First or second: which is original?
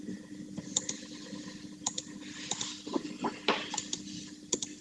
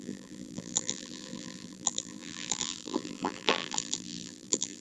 first